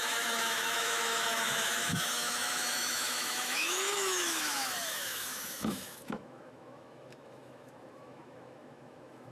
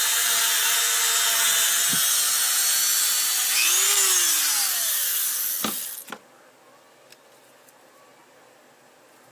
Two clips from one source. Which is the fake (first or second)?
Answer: first